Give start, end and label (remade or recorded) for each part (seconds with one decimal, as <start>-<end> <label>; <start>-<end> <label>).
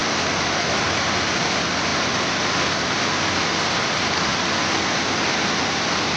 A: 0.0-0.6 recorded; 0.6-4.3 remade; 4.3-5.0 recorded; 5.0-6.2 remade